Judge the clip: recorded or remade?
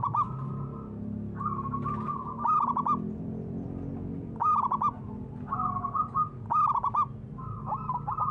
recorded